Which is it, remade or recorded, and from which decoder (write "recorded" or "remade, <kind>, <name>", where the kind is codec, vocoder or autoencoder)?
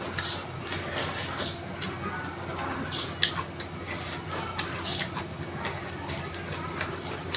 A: recorded